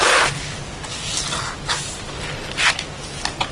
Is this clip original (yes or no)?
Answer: yes